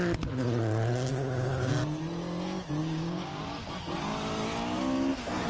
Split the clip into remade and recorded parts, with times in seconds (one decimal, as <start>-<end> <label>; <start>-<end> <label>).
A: 0.0-1.1 recorded; 1.1-1.7 remade; 1.7-2.8 recorded; 2.8-3.4 remade; 3.4-5.5 recorded